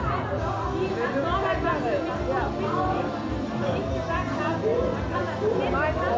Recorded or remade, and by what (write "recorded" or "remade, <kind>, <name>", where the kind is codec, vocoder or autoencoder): recorded